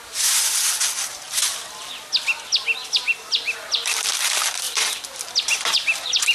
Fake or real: real